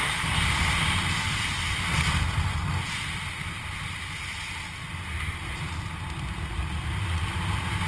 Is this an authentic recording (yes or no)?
yes